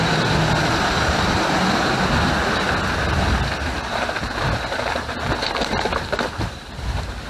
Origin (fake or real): real